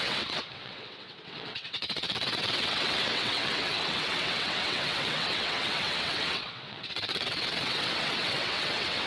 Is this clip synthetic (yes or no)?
yes